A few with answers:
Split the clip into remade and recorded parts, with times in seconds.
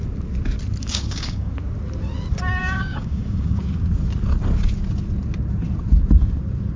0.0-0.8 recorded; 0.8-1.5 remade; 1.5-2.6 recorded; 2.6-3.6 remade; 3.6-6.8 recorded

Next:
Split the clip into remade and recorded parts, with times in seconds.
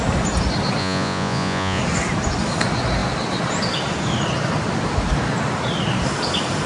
0.0-0.8 recorded; 0.8-1.8 remade; 1.8-6.7 recorded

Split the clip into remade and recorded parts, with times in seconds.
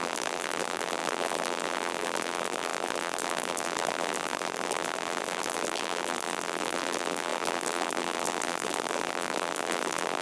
0.0-10.2 remade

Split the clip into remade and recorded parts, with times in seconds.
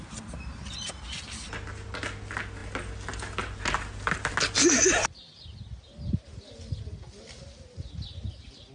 0.0-8.7 recorded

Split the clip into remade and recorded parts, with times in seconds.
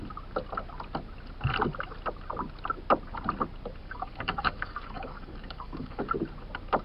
0.0-3.8 recorded; 3.8-6.0 remade; 6.0-6.8 recorded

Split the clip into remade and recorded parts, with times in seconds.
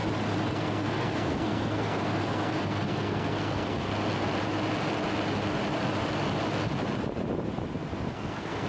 0.0-0.5 recorded; 0.5-3.9 remade; 3.9-8.1 recorded; 8.1-8.7 remade